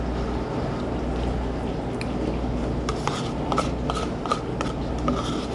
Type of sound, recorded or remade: recorded